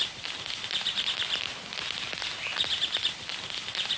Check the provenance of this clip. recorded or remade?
recorded